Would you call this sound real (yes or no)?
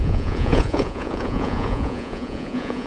no